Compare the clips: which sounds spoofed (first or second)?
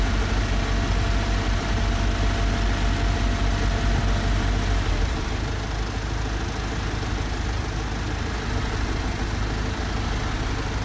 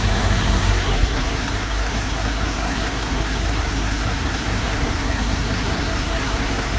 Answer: second